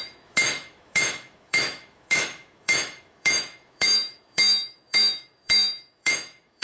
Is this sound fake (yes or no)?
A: yes